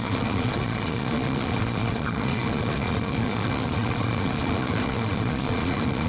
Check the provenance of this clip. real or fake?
fake